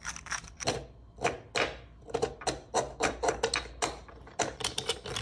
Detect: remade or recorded recorded